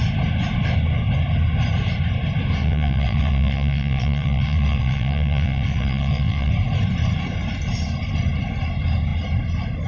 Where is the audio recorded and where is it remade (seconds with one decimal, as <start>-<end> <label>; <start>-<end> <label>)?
0.0-2.6 recorded; 2.6-6.5 remade; 6.5-9.9 recorded